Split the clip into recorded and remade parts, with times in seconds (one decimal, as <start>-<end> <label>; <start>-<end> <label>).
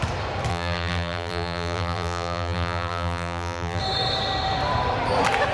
0.0-0.5 recorded; 0.5-3.8 remade; 3.8-5.5 recorded